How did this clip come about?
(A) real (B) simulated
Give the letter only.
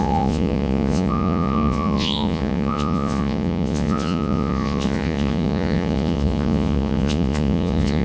B